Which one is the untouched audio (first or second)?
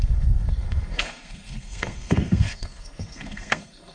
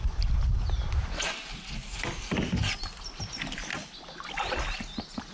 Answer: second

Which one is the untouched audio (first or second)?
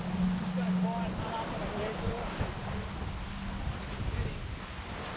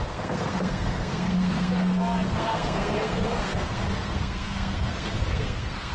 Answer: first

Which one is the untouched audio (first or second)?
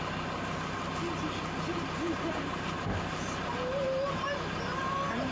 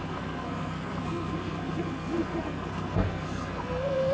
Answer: first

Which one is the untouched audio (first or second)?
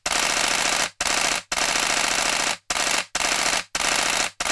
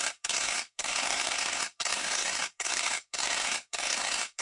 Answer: first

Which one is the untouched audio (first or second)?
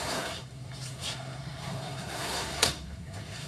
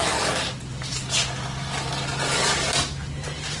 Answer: second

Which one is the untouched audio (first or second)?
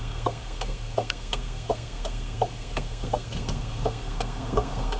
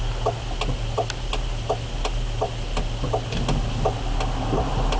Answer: second